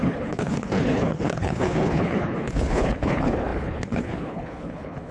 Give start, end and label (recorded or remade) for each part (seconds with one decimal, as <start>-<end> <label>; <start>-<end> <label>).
0.0-5.1 remade